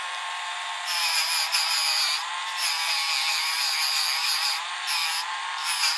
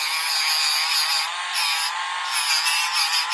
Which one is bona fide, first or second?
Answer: second